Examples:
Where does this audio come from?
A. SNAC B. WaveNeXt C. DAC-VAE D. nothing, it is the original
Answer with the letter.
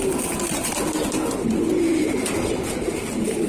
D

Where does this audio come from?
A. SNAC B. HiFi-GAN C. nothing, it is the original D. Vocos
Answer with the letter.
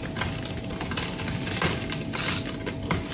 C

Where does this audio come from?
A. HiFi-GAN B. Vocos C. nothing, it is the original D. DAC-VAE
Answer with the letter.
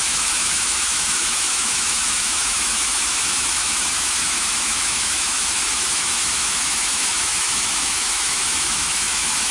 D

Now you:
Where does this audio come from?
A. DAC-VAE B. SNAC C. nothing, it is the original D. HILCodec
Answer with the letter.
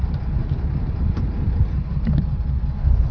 C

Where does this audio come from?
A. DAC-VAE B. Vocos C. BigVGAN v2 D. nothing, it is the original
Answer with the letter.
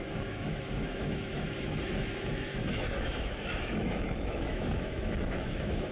A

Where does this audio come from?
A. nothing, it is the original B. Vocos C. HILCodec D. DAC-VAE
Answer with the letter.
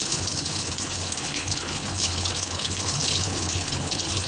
C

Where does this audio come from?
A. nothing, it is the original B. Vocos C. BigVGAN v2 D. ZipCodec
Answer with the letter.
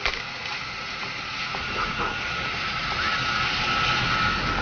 A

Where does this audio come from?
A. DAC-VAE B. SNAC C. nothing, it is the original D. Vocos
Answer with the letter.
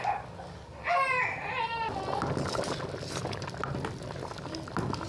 C